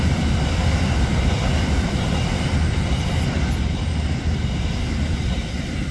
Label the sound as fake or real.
real